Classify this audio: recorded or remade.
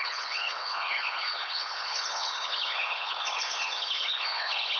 remade